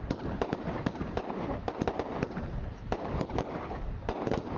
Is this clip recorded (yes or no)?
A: no